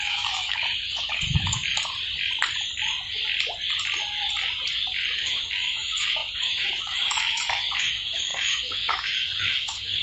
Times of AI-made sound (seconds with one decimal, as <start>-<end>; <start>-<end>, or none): 0.0-1.7; 5.2-10.0